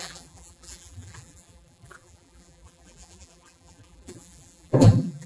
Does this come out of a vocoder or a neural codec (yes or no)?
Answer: yes